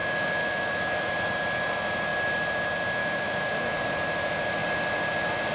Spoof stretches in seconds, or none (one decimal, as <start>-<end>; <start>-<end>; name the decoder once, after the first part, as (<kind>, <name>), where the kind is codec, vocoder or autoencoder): 0.0-1.1 (autoencoder, DAC-VAE); 3.0-3.8